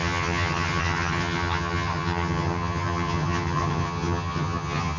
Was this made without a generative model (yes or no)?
no